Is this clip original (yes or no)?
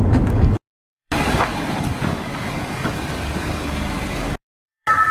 no